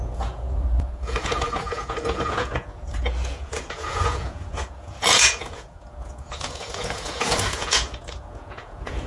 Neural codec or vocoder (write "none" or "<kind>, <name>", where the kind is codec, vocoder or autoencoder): vocoder, Vocos